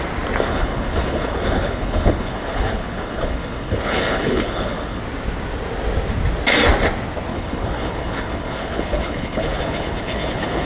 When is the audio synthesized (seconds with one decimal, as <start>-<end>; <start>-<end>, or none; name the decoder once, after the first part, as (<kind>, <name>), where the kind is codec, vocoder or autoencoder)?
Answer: 0.5-5.0 (codec, HILCodec); 7.3-10.7